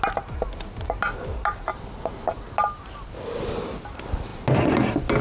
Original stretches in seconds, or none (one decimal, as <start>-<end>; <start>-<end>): 0.0-5.2